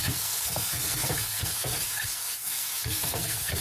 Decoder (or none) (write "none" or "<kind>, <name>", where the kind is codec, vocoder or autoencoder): codec, SNAC